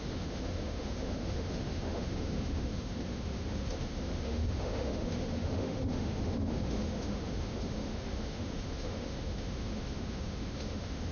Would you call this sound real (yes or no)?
no